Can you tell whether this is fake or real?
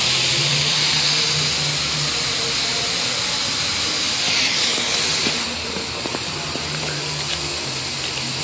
real